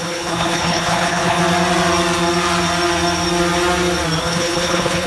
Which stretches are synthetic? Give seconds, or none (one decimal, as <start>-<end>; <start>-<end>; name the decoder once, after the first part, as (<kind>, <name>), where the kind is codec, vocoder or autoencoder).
0.0-1.4 (codec, HILCodec); 4.2-5.1